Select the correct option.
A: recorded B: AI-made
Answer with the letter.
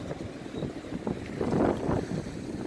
A